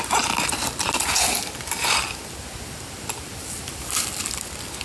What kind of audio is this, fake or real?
real